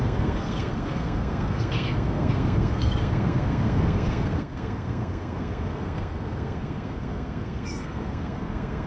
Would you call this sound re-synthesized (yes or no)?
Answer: yes